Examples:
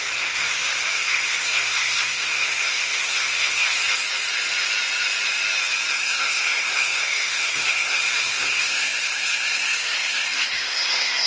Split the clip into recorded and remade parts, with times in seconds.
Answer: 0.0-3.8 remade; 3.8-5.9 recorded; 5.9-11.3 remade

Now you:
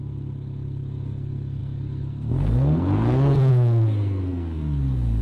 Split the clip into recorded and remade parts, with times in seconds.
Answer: 0.0-5.2 remade